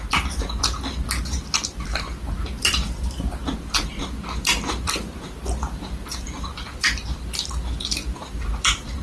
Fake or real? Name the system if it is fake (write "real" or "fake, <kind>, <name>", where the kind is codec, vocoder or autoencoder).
fake, vocoder, BigVGAN v2